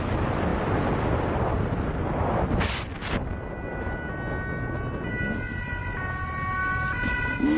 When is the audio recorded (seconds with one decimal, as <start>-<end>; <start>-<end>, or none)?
0.0-7.6